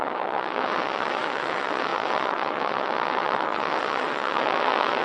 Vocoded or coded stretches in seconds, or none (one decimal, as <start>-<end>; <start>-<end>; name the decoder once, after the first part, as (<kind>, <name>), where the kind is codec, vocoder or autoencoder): 0.0-5.0 (vocoder, WaveNeXt)